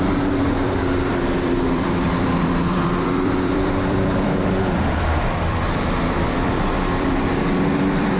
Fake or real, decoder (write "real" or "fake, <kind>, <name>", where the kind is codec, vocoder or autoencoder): fake, vocoder, BigVGAN v2